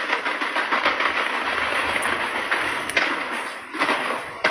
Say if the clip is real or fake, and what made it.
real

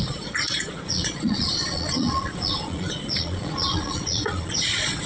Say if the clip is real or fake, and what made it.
fake, vocoder, Vocos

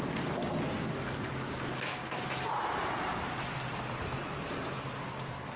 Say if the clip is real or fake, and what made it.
real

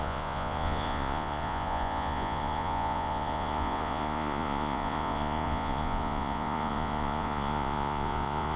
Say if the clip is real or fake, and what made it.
fake, vocoder, Vocos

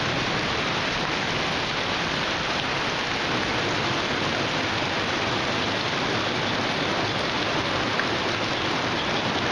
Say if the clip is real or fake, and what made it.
real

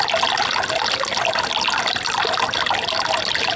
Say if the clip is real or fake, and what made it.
real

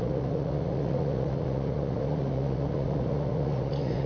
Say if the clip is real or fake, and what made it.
fake, vocoder, Vocos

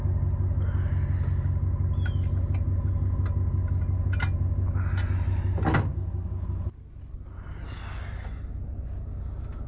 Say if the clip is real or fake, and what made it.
real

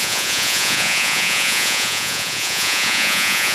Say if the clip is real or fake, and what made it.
fake, vocoder, Vocos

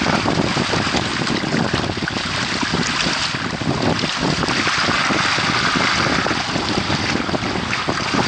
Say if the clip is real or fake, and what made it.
real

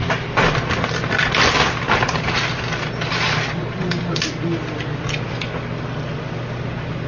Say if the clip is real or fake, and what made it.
real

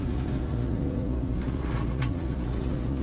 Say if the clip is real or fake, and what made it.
fake, vocoder, Vocos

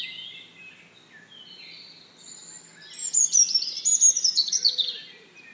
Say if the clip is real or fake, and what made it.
real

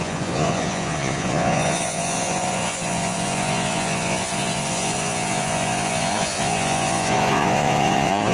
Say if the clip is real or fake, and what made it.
fake, vocoder, Vocos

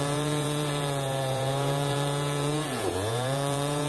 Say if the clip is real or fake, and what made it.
fake, vocoder, Vocos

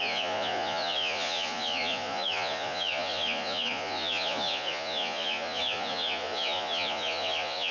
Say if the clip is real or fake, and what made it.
fake, vocoder, Vocos